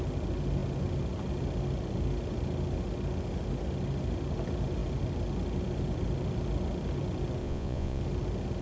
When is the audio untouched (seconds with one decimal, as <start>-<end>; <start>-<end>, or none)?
0.0-7.4; 8.0-8.6